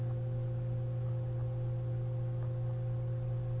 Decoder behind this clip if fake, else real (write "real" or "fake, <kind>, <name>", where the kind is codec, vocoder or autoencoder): real